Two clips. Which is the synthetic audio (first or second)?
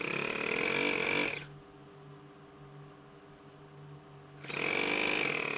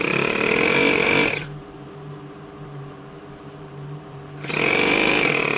second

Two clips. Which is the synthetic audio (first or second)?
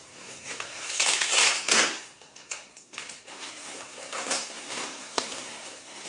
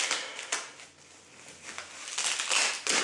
first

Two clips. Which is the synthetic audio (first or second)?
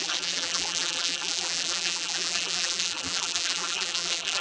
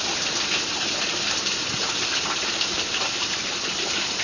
first